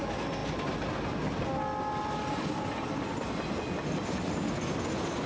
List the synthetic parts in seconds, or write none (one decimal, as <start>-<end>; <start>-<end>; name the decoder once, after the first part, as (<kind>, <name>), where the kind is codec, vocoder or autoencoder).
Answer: none